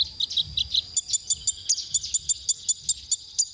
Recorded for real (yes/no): yes